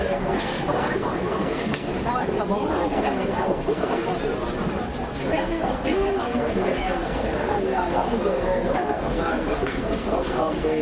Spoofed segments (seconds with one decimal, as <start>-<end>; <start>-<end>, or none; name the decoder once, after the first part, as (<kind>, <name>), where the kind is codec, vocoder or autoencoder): 0.0-1.9 (codec, SNAC); 2.7-4.1; 5.2-10.8